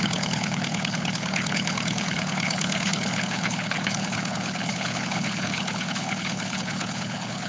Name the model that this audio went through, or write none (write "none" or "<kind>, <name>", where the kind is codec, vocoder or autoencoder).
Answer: codec, HILCodec